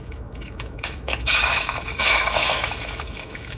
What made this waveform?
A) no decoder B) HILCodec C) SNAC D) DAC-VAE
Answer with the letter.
D